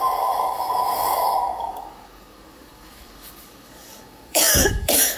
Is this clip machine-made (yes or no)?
yes